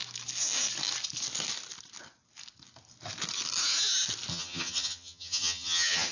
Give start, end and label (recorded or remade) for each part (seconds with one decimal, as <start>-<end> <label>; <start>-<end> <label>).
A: 0.0-4.3 recorded; 4.3-6.1 remade